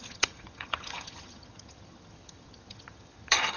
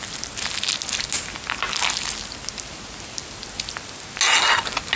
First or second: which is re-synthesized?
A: first